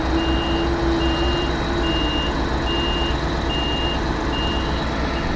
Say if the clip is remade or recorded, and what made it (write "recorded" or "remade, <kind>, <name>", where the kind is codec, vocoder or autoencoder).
recorded